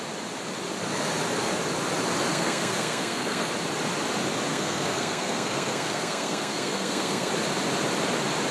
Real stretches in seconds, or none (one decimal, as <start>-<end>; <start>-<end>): 0.0-2.3; 3.5-4.5; 7.3-8.5